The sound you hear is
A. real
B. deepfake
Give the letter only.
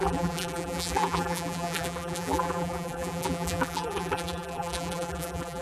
B